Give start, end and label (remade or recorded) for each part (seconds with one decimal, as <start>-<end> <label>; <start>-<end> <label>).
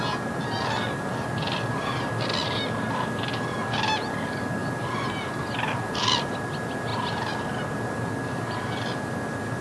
0.0-9.6 recorded